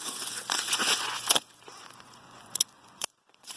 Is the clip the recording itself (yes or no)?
no